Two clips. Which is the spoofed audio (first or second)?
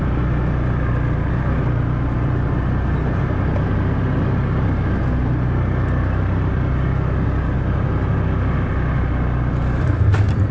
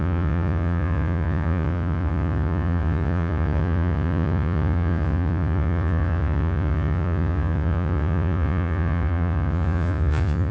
second